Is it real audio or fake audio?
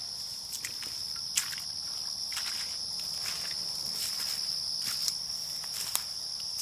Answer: real